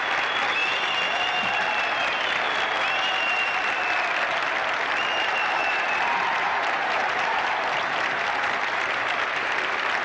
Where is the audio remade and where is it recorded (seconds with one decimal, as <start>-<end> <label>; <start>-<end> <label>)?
0.0-5.6 recorded; 5.6-9.6 remade; 9.6-10.0 recorded